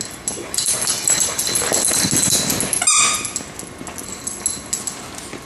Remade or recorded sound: recorded